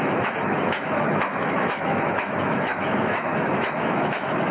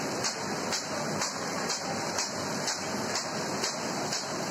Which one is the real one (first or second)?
second